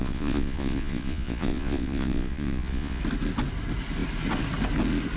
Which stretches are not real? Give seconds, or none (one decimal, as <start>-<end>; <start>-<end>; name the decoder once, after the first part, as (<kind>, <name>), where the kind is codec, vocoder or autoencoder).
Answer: 0.0-3.0 (vocoder, Vocos)